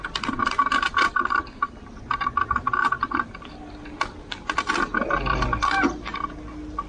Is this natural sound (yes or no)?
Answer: yes